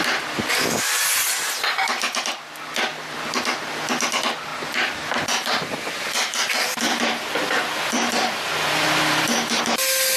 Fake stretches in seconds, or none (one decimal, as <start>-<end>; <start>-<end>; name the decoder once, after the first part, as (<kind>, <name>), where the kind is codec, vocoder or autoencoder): 4.5-9.6 (vocoder, BigVGAN v2)